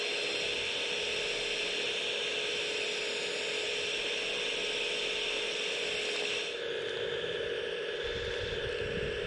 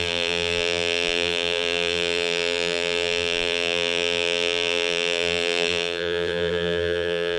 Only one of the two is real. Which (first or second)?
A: first